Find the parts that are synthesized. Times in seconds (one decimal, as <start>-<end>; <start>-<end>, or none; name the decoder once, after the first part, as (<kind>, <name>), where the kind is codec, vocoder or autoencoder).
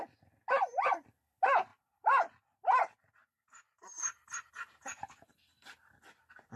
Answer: 1.7-4.5 (vocoder, BigVGAN v2); 4.9-5.4